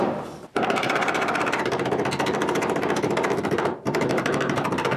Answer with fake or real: fake